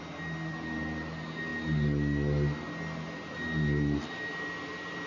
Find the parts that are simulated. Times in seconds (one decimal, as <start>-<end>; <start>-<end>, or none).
none